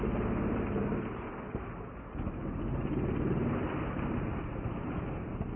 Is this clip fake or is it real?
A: real